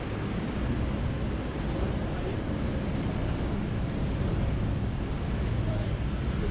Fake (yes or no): no